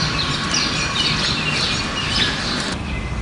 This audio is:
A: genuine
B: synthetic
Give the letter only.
A